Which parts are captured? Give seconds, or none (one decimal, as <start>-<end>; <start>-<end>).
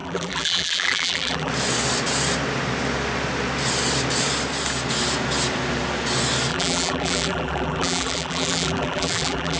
1.5-6.5